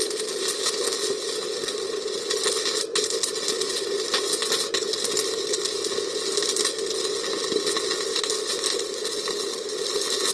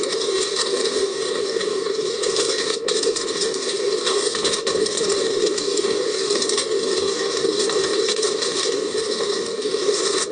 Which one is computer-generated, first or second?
second